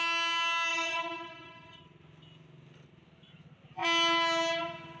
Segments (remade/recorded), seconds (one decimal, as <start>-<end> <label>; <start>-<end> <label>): 0.0-0.7 recorded; 0.7-1.8 remade; 1.8-5.0 recorded